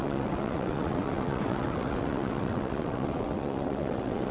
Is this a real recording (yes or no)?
no